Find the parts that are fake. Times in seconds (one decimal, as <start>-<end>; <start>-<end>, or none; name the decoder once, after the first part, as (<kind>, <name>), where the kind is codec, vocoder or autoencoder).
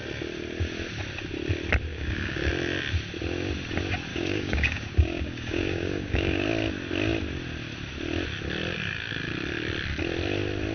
1.9-2.5 (codec, DAC); 4.1-6.5